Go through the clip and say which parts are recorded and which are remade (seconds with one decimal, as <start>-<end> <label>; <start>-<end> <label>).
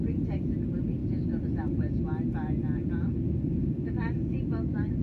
0.0-5.0 recorded